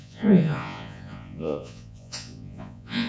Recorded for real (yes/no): no